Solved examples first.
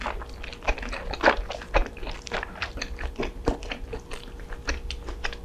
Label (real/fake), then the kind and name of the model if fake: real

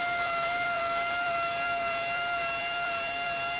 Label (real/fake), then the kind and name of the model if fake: fake, vocoder, BigVGAN v2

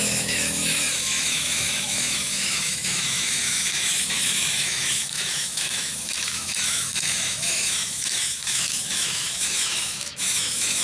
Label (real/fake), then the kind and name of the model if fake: fake, autoencoder, DAC-VAE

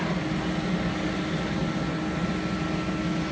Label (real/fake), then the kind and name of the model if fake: real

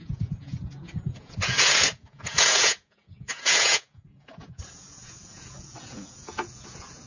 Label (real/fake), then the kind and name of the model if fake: fake, vocoder, Vocos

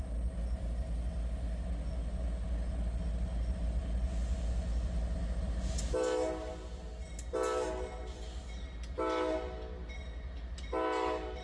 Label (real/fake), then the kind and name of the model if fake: real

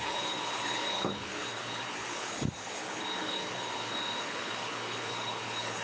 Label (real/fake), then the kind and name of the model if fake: fake, codec, HILCodec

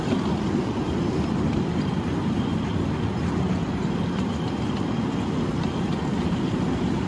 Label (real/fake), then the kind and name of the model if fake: real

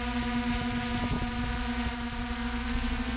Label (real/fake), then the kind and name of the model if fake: real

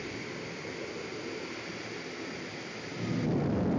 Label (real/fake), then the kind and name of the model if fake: real